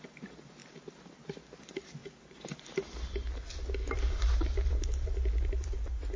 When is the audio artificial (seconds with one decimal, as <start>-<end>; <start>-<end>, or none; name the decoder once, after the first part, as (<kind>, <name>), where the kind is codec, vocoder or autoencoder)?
0.0-0.6 (vocoder, BigVGAN v2); 1.6-6.2